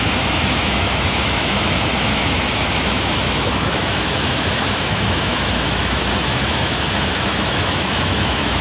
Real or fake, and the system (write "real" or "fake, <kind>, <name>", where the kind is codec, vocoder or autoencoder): fake, autoencoder, DAC-VAE